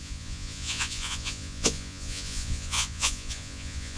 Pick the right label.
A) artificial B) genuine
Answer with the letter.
A